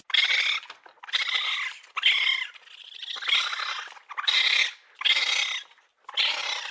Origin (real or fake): real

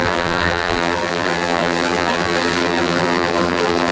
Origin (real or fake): fake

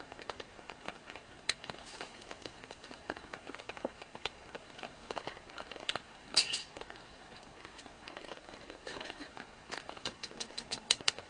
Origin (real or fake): fake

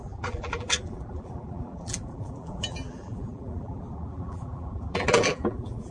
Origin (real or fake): fake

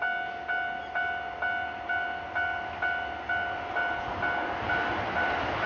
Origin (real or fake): real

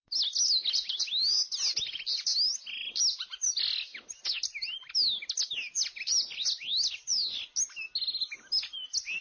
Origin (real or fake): real